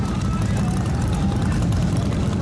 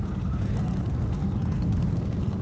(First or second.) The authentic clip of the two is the first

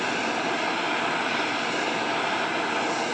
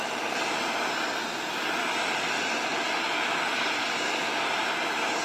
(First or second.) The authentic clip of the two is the second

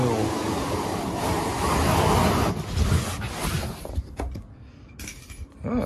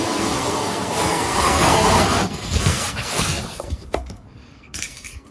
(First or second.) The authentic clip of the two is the first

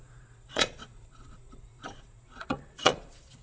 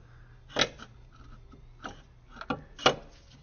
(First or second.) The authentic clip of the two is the second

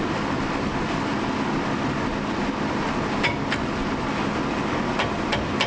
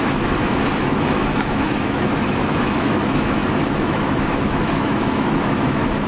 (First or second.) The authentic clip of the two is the first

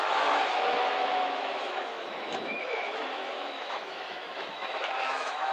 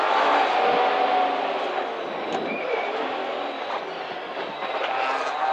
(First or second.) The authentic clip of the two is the second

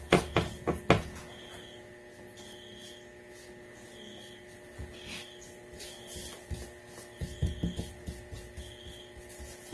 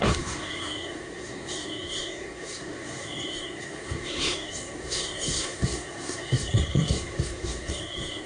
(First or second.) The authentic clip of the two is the first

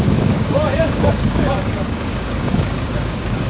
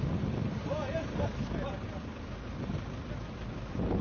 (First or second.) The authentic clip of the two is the second